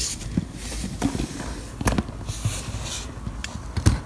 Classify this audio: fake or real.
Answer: real